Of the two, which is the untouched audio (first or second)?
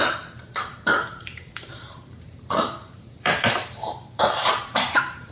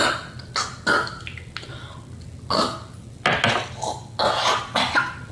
second